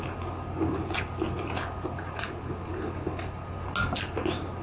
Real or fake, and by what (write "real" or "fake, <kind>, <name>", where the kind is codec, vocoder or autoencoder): real